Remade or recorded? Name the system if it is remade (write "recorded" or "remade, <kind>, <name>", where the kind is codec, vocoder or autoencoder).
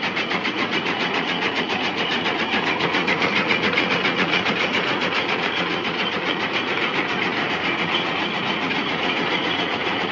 remade, vocoder, Vocos